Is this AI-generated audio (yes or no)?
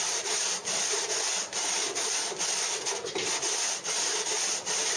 no